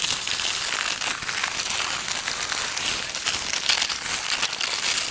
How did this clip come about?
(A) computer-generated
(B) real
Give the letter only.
B